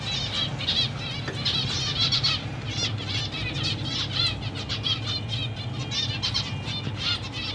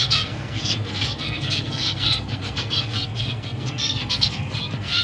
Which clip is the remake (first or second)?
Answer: second